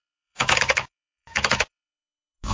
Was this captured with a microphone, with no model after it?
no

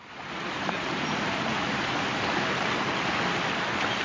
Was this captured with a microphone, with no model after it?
yes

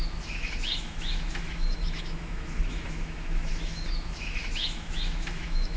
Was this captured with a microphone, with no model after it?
no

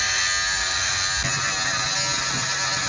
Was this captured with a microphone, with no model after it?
yes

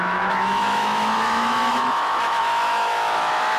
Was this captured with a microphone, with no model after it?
no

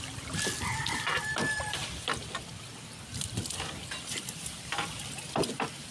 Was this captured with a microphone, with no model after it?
yes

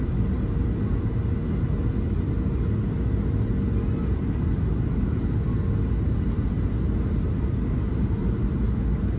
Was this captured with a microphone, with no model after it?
yes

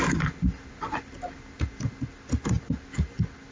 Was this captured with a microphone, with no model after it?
yes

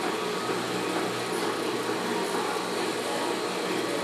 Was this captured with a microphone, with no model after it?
yes